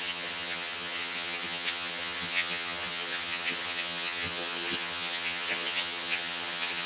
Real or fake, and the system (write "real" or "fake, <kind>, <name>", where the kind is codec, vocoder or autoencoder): fake, vocoder, HiFi-GAN